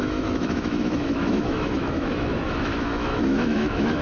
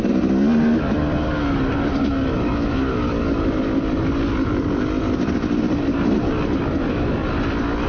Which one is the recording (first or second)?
second